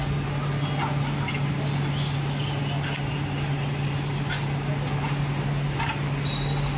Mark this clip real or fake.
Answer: real